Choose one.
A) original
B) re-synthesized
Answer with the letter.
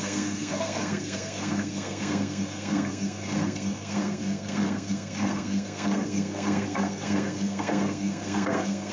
B